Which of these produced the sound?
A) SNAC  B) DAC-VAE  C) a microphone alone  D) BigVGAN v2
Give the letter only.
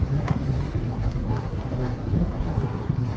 A